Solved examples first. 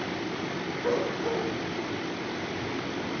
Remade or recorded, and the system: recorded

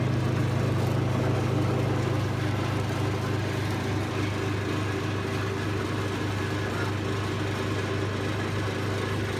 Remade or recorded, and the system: recorded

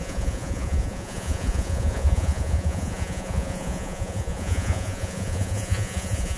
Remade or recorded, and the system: remade, vocoder, Vocos